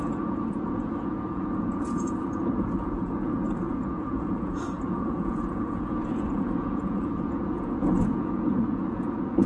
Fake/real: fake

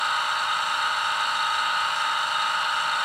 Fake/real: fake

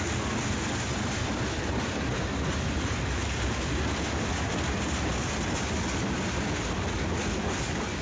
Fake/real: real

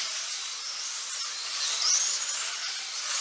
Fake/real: real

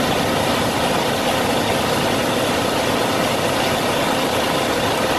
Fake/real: real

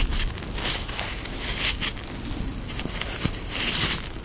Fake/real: real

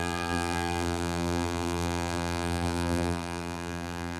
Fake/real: fake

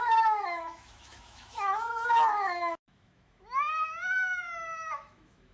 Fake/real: fake